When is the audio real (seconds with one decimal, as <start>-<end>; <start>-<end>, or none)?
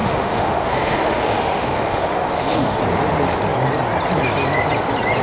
2.8-5.2